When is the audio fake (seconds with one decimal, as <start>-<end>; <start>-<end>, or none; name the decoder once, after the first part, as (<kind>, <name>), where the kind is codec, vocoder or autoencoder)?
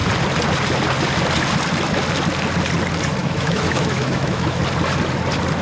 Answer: 3.2-4.6 (autoencoder, DAC-VAE)